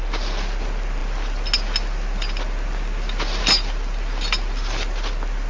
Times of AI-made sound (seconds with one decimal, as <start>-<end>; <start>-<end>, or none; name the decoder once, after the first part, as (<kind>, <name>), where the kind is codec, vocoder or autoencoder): none